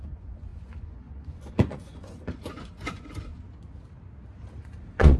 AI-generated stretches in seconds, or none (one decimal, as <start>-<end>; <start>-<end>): 0.0-3.3; 4.6-5.2